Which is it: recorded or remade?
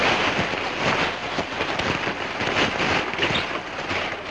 recorded